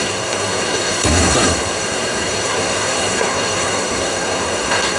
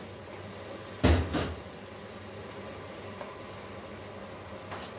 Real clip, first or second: second